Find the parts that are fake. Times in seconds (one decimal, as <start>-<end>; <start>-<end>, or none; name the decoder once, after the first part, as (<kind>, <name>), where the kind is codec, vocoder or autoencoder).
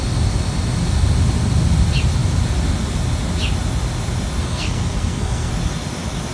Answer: 4.4-5.5 (codec, SNAC)